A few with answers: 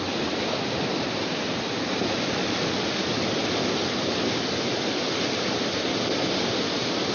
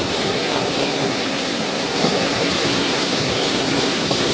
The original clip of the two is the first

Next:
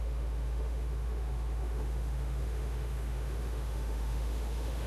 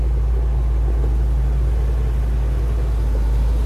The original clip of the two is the second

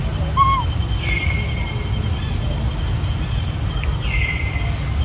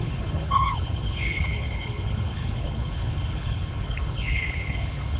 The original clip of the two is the first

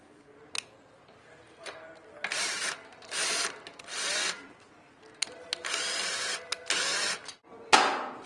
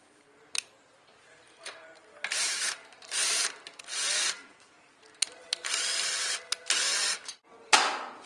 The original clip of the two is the first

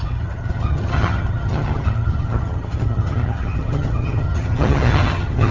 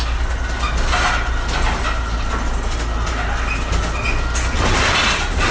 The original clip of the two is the second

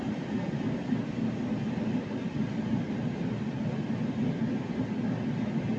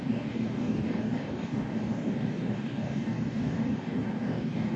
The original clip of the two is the first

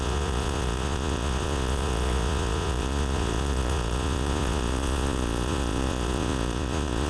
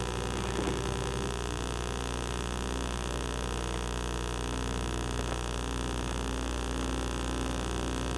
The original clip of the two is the second